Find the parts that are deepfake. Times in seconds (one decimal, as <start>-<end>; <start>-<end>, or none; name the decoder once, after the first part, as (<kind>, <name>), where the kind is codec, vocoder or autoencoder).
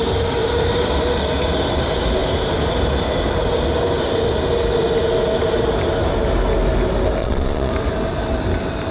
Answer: 7.2-7.7 (vocoder, Vocos)